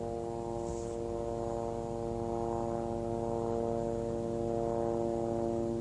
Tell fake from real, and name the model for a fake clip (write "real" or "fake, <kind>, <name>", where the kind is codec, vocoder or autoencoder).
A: real